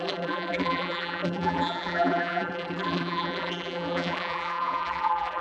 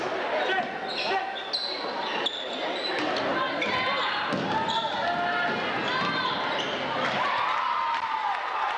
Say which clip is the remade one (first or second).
first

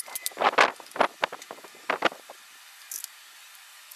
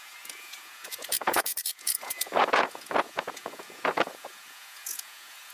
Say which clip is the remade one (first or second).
second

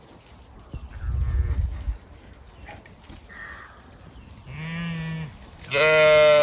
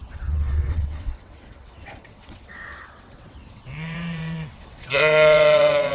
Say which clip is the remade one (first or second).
second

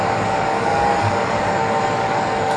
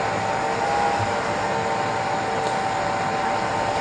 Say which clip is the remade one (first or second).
first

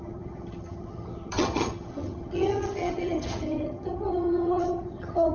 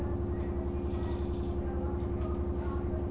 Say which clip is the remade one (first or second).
first